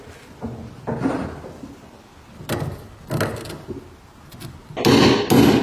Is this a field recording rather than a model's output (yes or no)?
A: yes